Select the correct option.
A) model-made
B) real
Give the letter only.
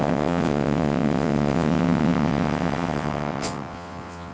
A